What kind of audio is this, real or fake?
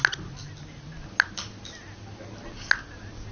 real